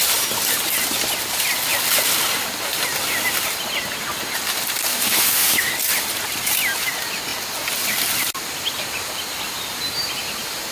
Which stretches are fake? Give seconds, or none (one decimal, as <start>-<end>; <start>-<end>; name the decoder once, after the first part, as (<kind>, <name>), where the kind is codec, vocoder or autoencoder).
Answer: 4.9-5.7 (autoencoder, DAC-VAE)